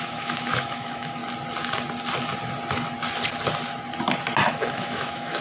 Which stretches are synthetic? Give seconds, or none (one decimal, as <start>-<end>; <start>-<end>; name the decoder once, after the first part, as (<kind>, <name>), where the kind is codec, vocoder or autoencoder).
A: 0.0-1.2 (autoencoder, DAC-VAE); 4.4-5.4